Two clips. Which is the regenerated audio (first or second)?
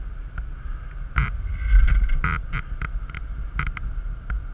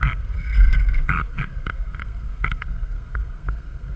second